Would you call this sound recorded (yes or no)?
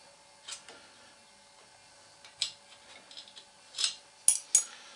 yes